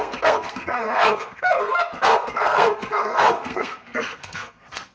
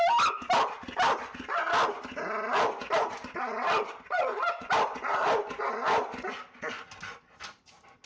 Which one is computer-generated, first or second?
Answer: first